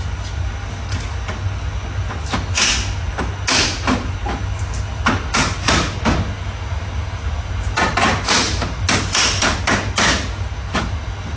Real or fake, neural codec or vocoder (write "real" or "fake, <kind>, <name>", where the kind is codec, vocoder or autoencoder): real